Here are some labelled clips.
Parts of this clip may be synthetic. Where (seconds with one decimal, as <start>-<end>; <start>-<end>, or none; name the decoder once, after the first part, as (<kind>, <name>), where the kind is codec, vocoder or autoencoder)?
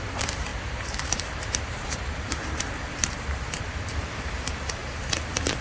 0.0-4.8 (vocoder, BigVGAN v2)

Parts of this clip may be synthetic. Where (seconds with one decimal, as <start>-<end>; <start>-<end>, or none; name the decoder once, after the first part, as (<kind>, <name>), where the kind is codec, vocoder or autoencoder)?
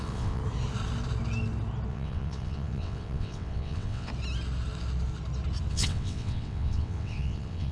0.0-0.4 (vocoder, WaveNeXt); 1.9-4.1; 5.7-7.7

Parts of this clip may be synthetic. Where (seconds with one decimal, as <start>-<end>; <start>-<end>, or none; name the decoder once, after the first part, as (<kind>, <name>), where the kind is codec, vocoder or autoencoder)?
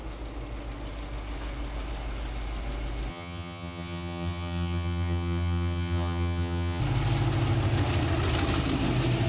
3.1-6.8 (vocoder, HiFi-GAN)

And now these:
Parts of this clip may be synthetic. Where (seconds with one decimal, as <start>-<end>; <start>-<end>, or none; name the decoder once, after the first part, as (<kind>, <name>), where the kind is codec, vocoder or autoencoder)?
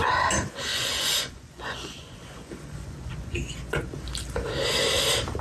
0.7-3.9 (vocoder, Vocos)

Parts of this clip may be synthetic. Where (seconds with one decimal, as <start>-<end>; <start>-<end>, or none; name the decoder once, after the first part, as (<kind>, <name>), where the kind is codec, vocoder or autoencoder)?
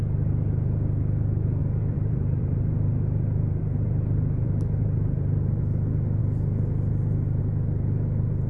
1.6-5.6 (vocoder, BigVGAN v2)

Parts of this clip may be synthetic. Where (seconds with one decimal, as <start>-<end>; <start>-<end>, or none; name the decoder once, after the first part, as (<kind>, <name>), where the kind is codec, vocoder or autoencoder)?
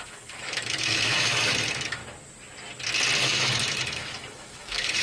0.0-2.0 (autoencoder, DAC-VAE); 3.2-5.0